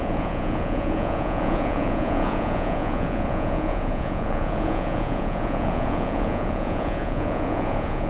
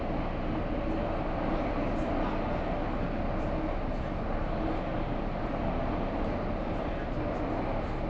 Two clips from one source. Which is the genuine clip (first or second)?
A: second